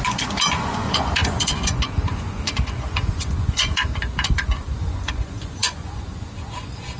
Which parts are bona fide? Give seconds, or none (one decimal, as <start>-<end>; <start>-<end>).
none